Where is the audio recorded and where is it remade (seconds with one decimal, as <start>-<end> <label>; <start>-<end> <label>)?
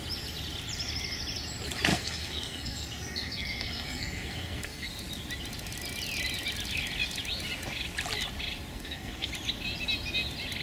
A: 0.0-1.9 recorded; 1.9-4.9 remade; 4.9-8.7 recorded; 8.7-9.3 remade; 9.3-10.6 recorded